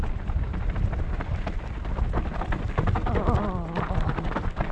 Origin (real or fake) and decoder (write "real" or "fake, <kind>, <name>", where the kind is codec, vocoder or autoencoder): real